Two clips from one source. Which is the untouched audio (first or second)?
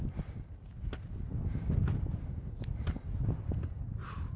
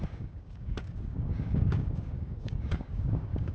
first